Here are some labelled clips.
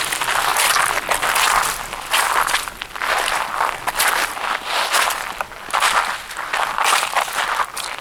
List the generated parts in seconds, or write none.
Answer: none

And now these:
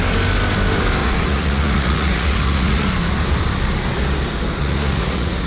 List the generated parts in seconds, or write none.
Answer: 1.0-2.9 (vocoder, Vocos); 4.6-5.5

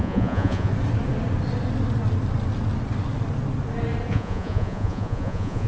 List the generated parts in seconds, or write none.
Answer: 0.0-0.7 (vocoder, Vocos); 4.1-5.7

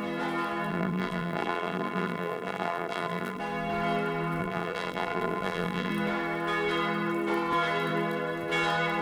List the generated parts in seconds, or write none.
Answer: 0.7-3.4 (vocoder, BigVGAN v2); 4.4-5.9

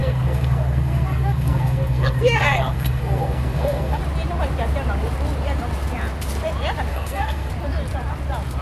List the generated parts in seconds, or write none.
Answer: 0.0-4.0 (codec, SNAC); 6.9-7.5

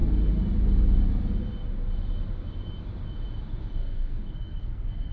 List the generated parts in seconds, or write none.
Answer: 3.8-5.1 (codec, SNAC)

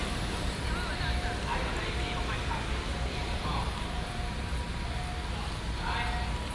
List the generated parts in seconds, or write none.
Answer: none